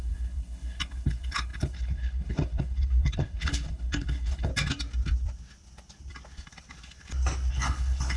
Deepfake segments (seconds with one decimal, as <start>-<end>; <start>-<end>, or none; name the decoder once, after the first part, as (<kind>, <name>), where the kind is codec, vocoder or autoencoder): 0.0-4.5 (codec, HILCodec); 7.5-8.2